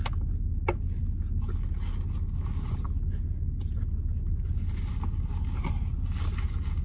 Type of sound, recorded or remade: recorded